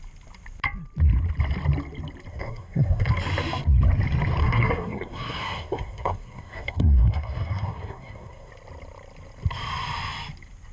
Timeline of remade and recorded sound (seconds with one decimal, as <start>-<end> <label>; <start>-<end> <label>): 0.0-2.3 recorded; 2.3-3.1 remade; 3.1-4.4 recorded; 4.4-8.5 remade; 8.5-10.7 recorded

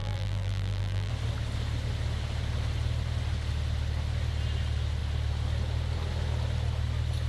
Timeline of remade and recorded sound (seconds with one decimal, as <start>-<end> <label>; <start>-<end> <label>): 0.0-1.1 remade; 1.1-7.3 recorded

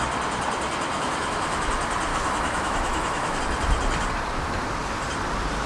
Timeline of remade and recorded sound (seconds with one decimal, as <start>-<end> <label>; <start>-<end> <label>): 0.0-0.9 recorded; 0.9-1.7 remade; 1.7-2.1 recorded; 2.1-3.4 remade; 3.4-5.7 recorded